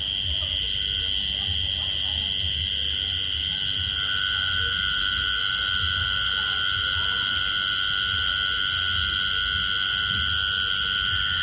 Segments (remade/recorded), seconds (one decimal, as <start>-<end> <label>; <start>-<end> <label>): 0.0-11.4 recorded